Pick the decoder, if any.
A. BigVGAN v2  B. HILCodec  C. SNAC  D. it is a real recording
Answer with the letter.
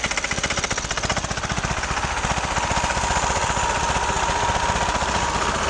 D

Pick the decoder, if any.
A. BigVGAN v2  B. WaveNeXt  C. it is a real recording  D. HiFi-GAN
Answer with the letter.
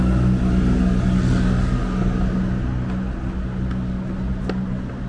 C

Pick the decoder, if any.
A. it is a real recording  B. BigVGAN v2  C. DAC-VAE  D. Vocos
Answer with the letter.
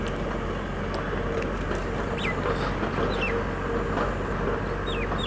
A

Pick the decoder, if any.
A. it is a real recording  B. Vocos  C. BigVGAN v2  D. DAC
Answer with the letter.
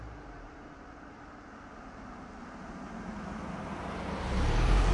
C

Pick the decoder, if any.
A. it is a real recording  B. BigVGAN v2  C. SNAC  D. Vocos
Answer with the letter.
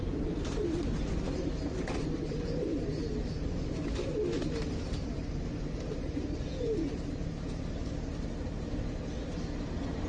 A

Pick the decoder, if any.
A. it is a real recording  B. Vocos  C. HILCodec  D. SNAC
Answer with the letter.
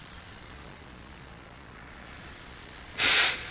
B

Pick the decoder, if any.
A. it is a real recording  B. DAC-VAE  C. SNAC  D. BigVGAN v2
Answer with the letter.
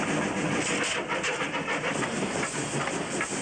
A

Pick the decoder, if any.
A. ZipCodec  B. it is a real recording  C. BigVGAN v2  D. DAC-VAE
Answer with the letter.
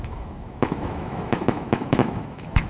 D